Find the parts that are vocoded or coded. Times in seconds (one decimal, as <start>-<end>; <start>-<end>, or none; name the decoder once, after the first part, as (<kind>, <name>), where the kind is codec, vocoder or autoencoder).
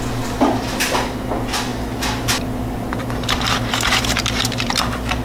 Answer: none